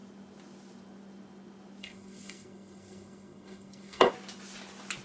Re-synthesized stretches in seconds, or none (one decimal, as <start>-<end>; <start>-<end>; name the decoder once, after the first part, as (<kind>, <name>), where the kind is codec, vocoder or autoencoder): 1.8-4.1 (codec, SNAC)